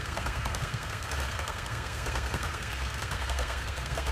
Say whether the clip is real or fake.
fake